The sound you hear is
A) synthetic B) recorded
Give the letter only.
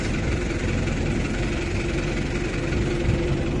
A